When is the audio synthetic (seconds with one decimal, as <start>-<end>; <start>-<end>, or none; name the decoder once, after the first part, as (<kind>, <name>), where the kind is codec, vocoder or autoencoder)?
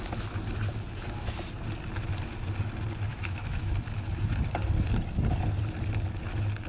3.1-3.7 (autoencoder, DAC-VAE)